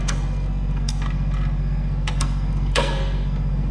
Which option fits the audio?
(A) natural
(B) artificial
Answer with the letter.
B